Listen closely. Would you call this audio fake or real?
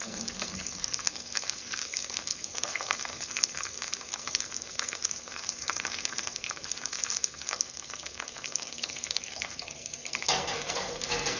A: fake